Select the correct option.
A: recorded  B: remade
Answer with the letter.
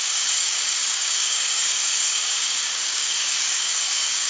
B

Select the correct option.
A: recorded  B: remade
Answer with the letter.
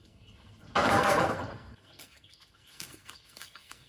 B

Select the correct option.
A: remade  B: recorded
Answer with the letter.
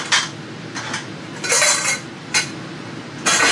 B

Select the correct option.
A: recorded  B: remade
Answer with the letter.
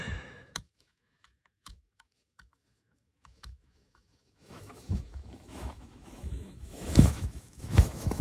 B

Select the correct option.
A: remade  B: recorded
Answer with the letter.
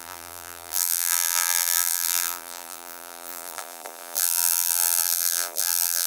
A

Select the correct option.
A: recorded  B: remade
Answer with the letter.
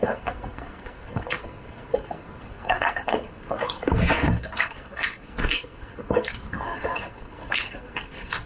B